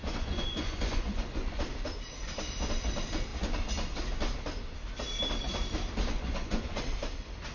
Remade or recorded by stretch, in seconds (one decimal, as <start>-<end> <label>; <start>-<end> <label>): 0.0-1.6 remade; 1.6-6.1 recorded; 6.1-6.8 remade; 6.8-7.5 recorded

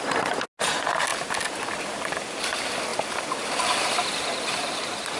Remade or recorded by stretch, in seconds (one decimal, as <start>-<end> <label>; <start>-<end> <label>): 0.0-2.9 recorded; 2.9-5.2 remade

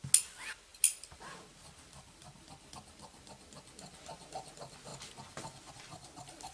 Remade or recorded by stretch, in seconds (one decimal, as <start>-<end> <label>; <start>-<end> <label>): 0.0-6.5 recorded

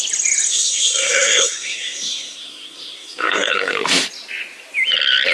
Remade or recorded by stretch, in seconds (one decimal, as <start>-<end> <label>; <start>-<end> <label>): 0.0-0.5 recorded; 0.5-3.7 remade; 3.7-5.3 recorded